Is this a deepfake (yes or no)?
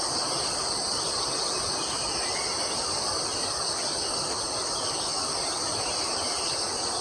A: no